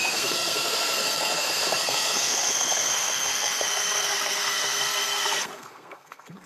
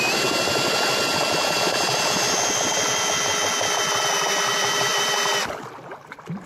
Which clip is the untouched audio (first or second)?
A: second